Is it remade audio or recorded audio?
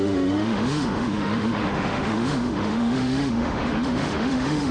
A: remade